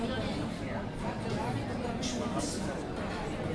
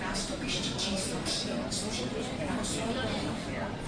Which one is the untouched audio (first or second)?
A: first